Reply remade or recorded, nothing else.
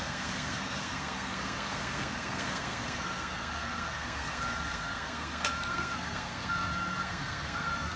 remade